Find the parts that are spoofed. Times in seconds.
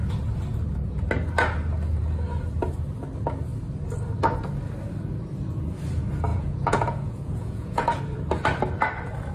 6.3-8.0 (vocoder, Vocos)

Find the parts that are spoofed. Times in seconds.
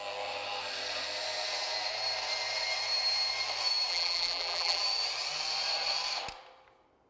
3.9-4.8 (vocoder, BigVGAN v2)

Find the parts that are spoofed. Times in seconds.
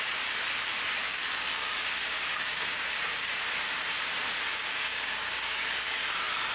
1.0-3.4 (codec, DAC); 4.5-6.5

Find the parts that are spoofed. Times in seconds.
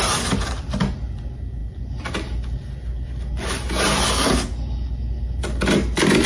none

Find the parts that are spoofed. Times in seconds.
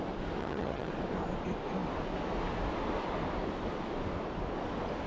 0.4-0.9 (vocoder, HiFi-GAN)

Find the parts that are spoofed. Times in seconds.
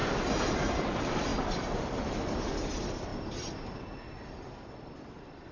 0.0-0.9 (vocoder, BigVGAN v2); 1.3-2.2